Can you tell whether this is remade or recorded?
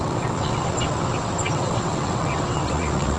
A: remade